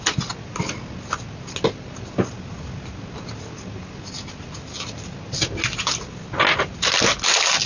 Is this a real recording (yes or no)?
yes